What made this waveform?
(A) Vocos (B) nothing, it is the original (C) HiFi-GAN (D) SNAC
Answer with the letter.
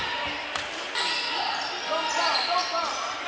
B